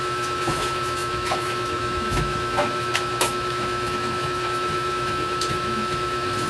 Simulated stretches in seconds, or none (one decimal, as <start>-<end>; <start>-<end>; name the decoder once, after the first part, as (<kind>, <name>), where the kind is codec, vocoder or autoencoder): 0.0-6.5 (autoencoder, DAC-VAE)